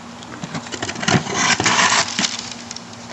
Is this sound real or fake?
real